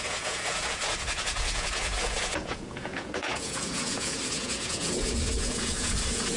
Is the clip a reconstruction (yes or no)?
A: yes